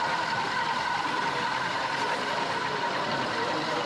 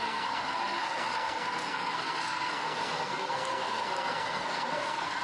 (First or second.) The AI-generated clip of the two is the second